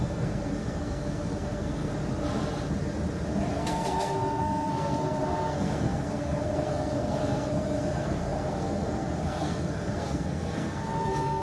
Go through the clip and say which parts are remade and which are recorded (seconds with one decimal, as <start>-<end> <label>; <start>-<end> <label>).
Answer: 0.0-1.9 remade; 1.9-3.5 recorded; 3.5-11.4 remade

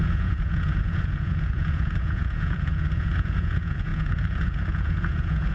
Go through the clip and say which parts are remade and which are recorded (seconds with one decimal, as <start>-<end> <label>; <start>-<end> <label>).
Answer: 0.0-5.5 remade